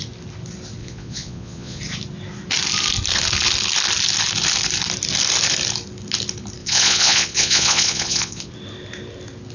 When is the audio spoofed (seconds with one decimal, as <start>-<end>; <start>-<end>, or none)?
0.8-1.8; 6.6-8.5